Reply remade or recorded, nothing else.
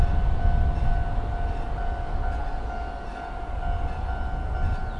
recorded